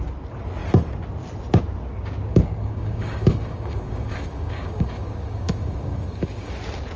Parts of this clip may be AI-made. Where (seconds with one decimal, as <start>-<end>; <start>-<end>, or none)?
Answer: 2.3-6.5